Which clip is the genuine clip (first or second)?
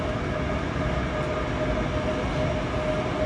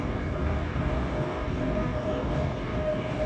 first